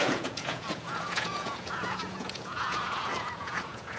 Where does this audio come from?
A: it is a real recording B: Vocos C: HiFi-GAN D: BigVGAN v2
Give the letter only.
B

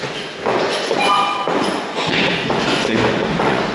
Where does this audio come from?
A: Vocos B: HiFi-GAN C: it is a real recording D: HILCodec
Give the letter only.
A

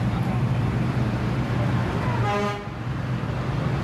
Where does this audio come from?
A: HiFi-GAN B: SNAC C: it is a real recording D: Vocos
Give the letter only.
C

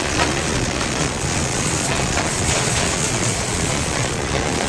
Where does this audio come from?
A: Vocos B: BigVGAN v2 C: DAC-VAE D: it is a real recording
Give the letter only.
A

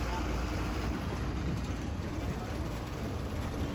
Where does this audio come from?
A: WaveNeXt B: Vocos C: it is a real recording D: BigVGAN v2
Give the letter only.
D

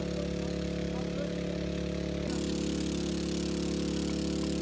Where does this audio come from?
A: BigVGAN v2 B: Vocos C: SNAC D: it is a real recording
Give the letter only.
D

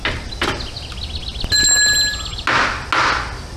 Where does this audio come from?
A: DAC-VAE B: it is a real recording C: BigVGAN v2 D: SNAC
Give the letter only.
B